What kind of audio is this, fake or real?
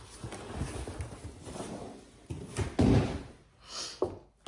real